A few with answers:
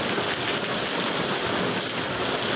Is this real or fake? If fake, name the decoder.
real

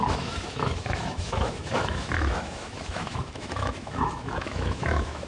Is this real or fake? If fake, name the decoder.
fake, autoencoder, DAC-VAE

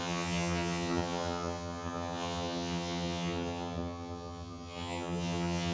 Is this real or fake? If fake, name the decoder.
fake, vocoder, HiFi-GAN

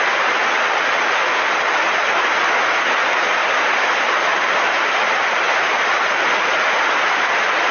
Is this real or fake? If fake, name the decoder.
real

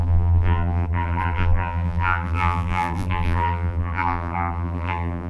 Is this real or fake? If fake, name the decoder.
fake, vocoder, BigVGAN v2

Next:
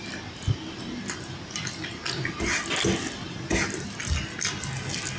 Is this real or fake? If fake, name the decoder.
real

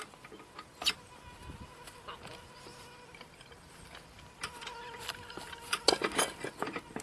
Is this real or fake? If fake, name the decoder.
real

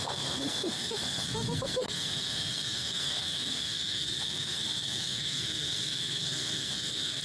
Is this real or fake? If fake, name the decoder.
fake, codec, SNAC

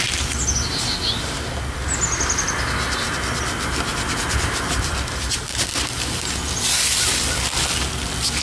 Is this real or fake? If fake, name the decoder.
real